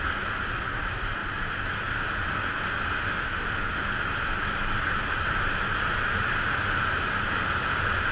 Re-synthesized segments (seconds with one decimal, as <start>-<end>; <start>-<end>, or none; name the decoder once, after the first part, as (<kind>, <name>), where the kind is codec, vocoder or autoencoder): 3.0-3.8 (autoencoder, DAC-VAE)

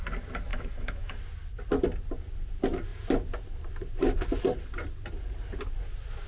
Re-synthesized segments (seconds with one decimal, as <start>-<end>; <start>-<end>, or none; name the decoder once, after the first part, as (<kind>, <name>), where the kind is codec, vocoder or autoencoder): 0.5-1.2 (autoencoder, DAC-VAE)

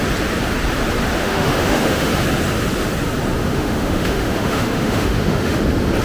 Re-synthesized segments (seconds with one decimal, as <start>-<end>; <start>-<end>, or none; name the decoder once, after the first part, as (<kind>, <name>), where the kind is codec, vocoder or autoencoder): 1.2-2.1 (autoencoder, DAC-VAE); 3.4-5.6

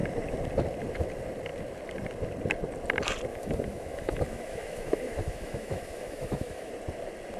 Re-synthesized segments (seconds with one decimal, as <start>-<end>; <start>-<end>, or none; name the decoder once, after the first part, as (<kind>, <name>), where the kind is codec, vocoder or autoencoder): 3.3-6.7 (autoencoder, DAC-VAE)

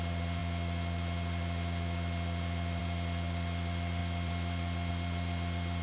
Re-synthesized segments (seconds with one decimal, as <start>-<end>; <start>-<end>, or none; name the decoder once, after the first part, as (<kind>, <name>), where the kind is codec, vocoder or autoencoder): none

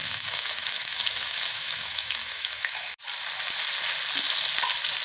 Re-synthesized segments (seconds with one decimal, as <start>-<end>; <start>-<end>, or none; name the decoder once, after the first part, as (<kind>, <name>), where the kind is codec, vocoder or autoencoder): 0.0-3.0 (autoencoder, DAC-VAE)

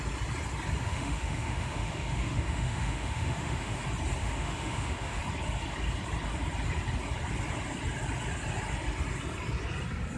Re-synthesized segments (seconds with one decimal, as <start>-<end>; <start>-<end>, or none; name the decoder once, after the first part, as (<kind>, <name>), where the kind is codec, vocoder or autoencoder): 0.8-3.8 (autoencoder, DAC-VAE); 4.2-5.2

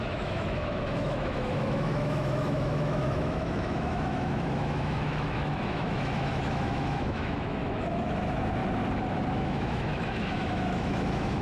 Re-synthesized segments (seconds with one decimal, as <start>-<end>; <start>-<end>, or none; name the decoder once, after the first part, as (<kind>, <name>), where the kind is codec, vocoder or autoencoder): 0.0-8.6 (autoencoder, DAC-VAE); 9.3-11.4